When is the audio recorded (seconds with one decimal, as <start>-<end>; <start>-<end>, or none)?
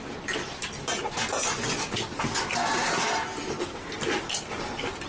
0.0-5.1